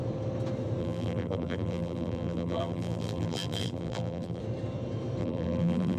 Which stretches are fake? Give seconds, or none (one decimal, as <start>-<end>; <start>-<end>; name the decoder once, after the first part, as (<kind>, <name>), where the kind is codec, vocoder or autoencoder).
0.8-4.4 (vocoder, BigVGAN v2); 5.2-6.0